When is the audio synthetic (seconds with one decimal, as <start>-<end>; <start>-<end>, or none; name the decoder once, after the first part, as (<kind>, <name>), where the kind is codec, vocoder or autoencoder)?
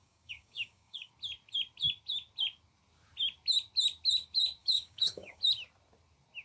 0.0-1.1 (codec, DAC); 4.6-5.4